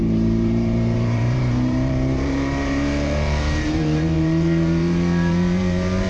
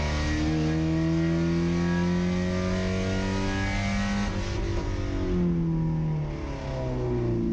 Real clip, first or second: second